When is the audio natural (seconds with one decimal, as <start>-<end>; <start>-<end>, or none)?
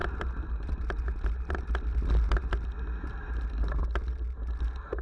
1.6-5.0